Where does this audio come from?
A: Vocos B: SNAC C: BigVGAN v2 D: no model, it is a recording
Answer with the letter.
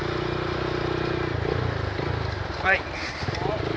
D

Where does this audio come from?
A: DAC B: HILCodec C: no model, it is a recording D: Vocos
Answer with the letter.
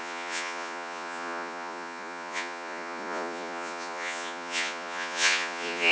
D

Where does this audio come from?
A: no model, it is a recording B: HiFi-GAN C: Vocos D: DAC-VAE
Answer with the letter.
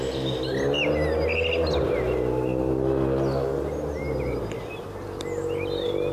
A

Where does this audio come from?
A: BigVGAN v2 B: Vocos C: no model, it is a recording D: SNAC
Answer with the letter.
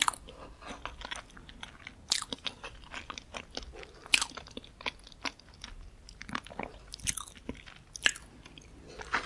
C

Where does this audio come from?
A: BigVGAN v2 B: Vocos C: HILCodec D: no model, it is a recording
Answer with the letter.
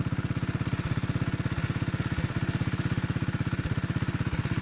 D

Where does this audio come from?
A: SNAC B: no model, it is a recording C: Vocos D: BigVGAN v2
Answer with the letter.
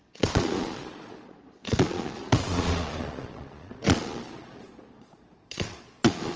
C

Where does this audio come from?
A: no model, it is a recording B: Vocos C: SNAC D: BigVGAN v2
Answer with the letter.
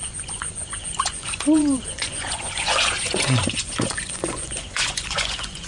B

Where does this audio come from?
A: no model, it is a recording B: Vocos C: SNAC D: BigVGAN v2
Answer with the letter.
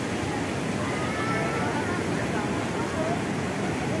A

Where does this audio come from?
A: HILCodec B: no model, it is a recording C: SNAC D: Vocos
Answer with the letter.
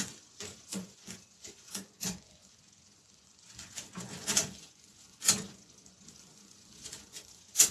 D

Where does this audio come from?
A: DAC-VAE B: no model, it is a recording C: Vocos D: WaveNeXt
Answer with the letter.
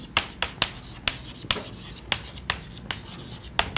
B